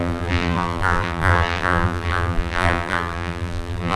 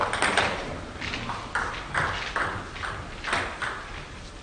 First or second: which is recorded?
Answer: second